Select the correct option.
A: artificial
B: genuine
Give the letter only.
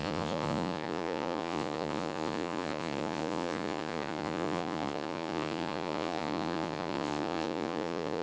A